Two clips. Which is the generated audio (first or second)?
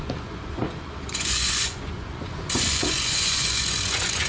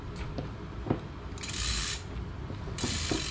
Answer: first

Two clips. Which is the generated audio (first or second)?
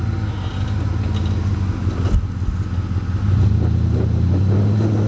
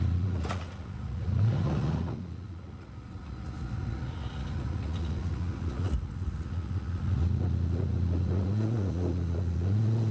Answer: second